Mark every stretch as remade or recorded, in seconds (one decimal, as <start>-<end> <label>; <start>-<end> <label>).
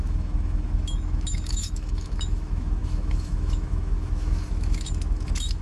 0.0-5.6 remade